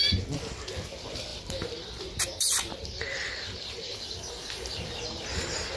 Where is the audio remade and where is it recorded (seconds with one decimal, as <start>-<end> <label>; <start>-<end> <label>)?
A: 0.0-1.3 recorded; 1.3-4.3 remade; 4.3-5.8 recorded